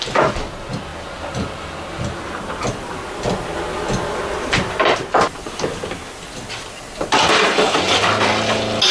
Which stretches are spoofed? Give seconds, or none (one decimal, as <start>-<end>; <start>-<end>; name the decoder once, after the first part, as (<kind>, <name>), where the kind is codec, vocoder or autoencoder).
none